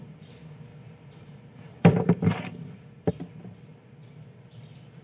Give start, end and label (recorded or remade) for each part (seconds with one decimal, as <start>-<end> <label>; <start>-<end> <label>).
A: 0.0-0.7 recorded; 0.7-3.1 remade; 3.1-5.0 recorded